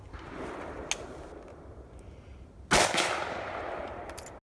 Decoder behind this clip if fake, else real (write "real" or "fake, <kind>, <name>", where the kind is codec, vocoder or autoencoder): real